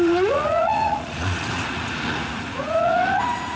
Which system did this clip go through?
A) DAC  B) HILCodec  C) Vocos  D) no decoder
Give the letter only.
C